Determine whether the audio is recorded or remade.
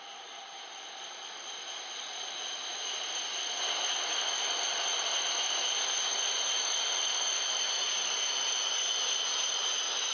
recorded